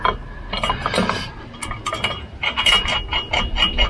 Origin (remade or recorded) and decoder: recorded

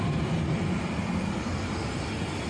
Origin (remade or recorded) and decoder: recorded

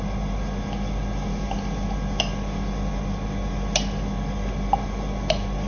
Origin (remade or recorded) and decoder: recorded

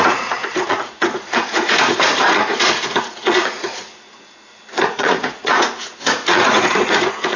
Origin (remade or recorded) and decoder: remade, vocoder, Vocos